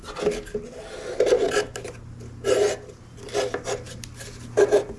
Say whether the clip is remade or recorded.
recorded